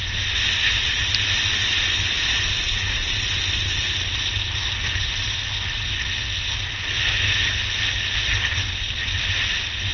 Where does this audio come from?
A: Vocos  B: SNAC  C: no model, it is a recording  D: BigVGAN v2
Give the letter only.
C